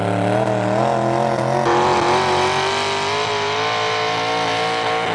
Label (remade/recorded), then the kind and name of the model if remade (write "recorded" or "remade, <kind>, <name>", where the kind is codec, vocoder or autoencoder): recorded